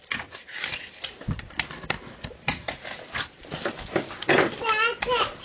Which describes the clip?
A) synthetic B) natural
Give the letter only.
B